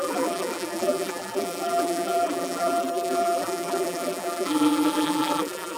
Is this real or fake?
fake